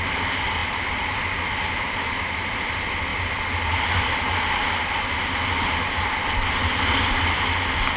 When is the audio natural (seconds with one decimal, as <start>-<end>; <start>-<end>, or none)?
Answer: 0.0-8.0